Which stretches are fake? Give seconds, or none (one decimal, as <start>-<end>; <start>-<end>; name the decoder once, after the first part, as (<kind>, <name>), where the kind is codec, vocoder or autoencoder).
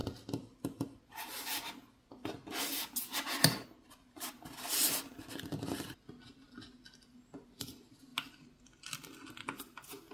none